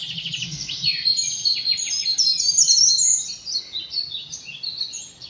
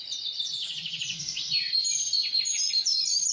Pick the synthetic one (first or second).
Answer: second